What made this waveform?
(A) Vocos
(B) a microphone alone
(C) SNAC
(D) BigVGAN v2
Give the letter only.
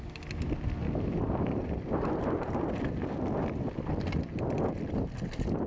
B